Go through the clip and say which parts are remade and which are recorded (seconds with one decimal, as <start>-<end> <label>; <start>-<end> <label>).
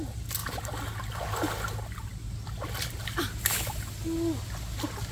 0.0-5.1 recorded